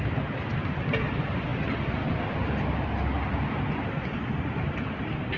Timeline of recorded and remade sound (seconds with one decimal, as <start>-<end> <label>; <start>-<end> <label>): 0.0-5.4 recorded